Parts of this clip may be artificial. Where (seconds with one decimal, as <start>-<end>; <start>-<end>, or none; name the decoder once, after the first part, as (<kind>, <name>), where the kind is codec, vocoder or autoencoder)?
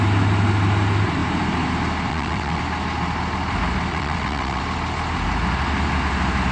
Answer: 2.1-2.6 (vocoder, WaveNeXt); 3.9-4.6